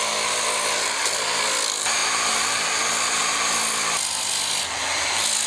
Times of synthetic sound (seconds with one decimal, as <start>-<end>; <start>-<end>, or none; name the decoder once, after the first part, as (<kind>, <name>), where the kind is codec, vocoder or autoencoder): none